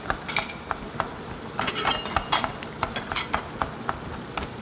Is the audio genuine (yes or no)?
yes